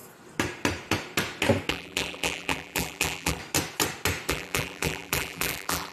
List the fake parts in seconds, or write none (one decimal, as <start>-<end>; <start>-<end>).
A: 1.7-3.4; 4.3-5.9